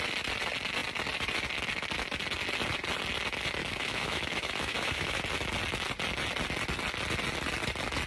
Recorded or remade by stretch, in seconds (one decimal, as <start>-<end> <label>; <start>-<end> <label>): 0.0-3.6 recorded; 3.6-5.2 remade; 5.2-8.1 recorded